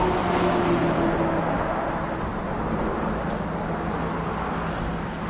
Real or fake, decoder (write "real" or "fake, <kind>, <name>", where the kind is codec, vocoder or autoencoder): real